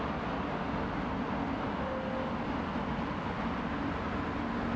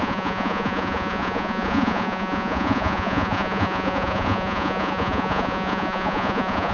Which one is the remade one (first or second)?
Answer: second